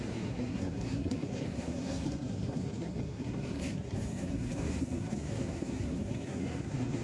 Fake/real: fake